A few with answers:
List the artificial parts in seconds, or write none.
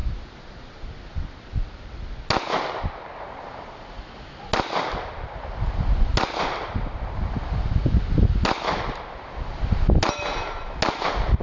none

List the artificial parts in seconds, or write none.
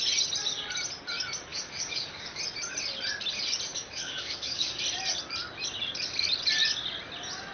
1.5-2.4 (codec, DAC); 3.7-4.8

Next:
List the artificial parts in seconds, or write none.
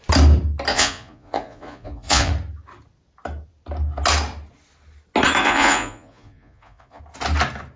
0.7-2.3 (vocoder, Vocos); 5.4-7.0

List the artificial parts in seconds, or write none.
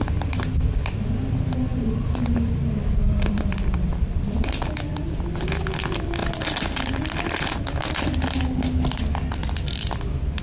1.7-5.1 (vocoder, BigVGAN v2)